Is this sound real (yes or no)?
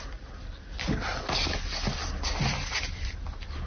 yes